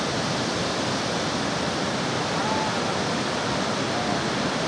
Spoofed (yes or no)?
no